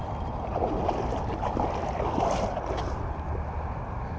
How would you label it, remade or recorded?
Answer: recorded